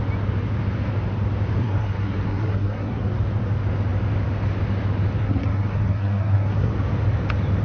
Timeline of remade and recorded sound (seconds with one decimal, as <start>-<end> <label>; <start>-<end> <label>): 0.0-1.6 recorded; 1.6-3.0 remade; 3.0-5.2 recorded; 5.2-6.7 remade; 6.7-7.6 recorded